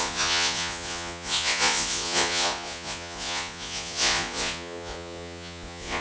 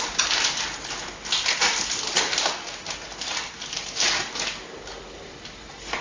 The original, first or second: second